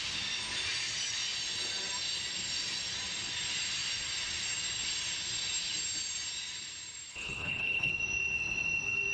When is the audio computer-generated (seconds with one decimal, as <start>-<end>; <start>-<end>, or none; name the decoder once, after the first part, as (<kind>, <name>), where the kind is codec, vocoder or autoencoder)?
7.1-7.9 (codec, HILCodec)

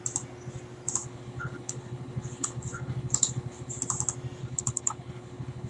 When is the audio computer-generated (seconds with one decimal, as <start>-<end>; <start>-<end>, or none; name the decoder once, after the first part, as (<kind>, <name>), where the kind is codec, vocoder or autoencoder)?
1.0-3.8 (codec, HILCodec); 4.4-5.7

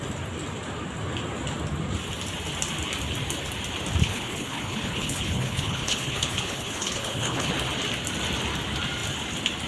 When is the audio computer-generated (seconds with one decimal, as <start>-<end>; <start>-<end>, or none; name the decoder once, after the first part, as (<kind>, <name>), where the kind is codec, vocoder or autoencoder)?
4.0-7.5 (codec, HILCodec)